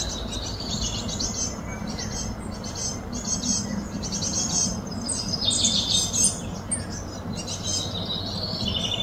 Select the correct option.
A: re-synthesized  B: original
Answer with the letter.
B